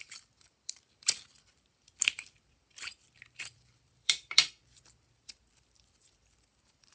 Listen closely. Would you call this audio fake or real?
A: fake